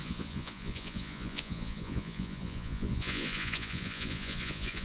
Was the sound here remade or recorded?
remade